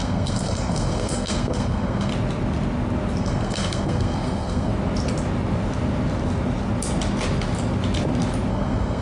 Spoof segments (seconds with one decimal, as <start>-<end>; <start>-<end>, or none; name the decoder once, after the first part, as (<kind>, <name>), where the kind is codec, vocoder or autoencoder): 0.0-2.1 (codec, SNAC); 3.2-4.7; 8.5-9.0